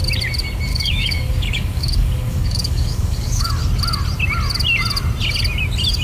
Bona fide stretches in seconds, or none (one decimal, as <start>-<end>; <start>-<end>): 0.0-0.7; 3.5-6.0